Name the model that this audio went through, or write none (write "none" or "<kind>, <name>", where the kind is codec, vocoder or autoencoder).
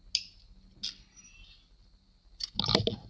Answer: none